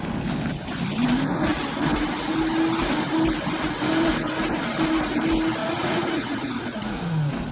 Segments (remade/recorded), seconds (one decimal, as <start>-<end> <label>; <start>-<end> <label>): 0.0-5.6 recorded; 5.6-7.0 remade; 7.0-7.5 recorded